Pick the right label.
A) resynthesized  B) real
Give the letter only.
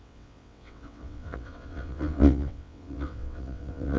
A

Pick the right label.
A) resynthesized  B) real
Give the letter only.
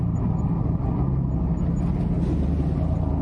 B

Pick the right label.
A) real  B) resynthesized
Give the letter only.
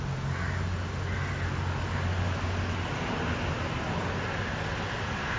A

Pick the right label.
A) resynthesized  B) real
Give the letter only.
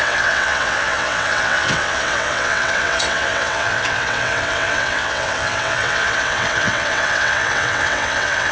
A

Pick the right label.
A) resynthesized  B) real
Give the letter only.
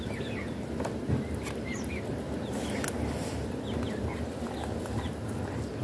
B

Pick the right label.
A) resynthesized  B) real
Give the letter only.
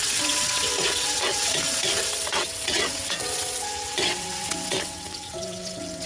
A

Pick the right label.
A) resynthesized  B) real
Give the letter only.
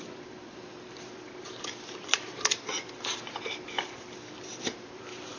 B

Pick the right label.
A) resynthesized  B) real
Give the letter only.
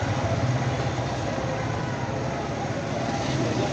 B